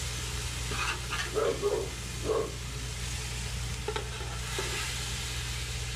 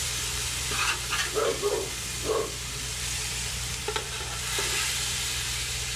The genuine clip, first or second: first